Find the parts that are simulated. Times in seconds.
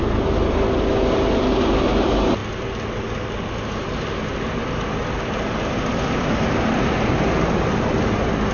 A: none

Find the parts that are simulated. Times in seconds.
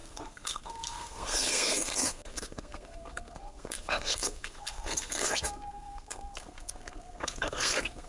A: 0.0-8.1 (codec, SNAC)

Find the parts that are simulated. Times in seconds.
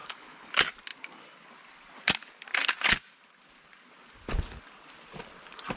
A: 0.0-0.5 (codec, HILCodec)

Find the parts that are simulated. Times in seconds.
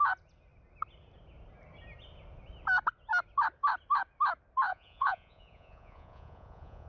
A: 4.7-6.9 (vocoder, Vocos)